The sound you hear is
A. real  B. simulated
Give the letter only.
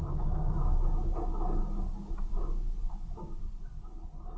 A